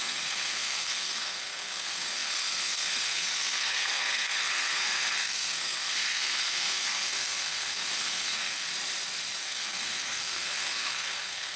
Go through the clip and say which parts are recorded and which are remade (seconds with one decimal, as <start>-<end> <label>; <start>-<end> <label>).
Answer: 0.0-8.7 remade; 8.7-9.4 recorded; 9.4-11.6 remade